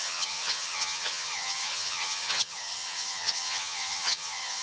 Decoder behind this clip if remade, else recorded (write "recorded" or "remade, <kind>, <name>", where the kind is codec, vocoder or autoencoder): remade, vocoder, HiFi-GAN